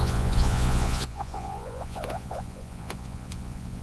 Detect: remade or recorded remade